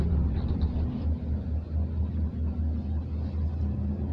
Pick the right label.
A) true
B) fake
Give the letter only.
A